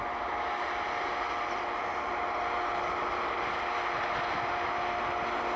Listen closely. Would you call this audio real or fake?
real